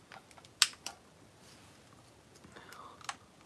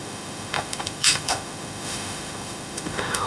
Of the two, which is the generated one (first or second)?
second